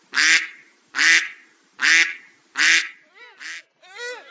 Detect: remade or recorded recorded